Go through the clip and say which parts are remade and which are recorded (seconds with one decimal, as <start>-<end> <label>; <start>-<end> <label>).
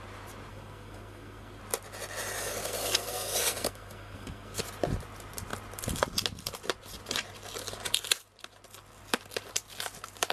0.0-0.5 recorded; 0.5-1.6 remade; 1.6-2.4 recorded; 2.4-4.6 remade; 4.6-10.3 recorded